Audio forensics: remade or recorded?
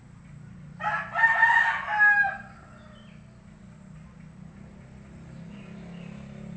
recorded